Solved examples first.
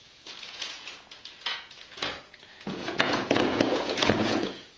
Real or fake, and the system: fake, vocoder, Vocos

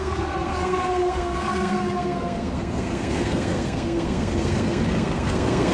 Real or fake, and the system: fake, codec, SNAC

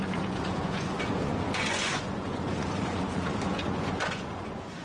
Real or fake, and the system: fake, vocoder, Vocos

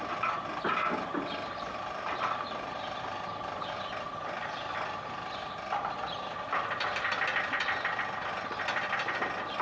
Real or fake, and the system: real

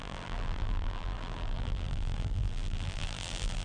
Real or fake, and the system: fake, vocoder, BigVGAN v2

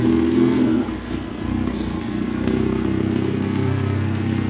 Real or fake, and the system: fake, codec, SNAC